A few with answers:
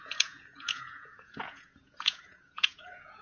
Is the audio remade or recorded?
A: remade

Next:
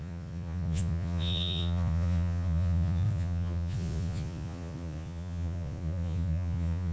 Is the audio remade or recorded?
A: remade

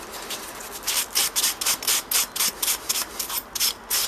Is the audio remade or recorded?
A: recorded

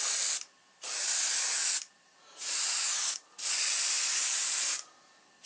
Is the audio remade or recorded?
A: recorded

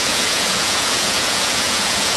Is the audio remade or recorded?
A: remade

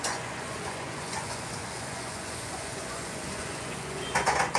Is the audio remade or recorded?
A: remade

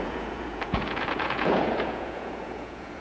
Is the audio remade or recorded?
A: remade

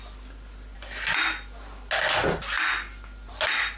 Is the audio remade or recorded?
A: recorded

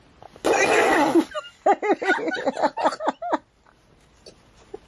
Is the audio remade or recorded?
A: recorded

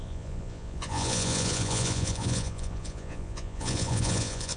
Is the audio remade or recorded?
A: remade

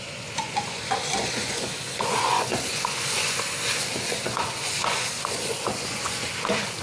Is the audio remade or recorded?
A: remade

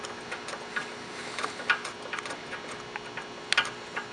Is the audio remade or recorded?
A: recorded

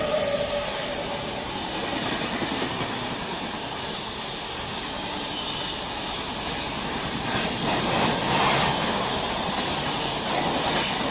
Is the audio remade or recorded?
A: recorded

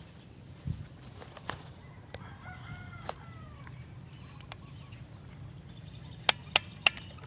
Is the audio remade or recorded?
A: recorded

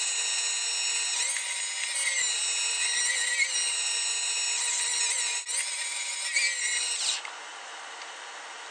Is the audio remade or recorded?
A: recorded